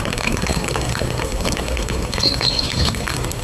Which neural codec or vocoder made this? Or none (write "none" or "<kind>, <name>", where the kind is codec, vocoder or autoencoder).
codec, SNAC